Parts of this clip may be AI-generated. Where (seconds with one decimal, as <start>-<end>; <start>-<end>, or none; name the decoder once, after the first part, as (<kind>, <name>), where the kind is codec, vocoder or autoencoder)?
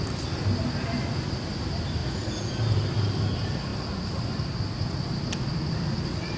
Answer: 2.0-2.5 (vocoder, Vocos)